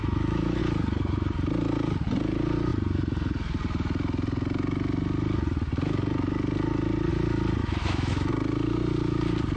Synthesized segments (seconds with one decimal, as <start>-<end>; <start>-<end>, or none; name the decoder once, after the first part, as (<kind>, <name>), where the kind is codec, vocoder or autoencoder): 0.0-0.6 (autoencoder, DAC-VAE); 7.6-8.3